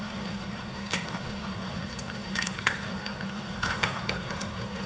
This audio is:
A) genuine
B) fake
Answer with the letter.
B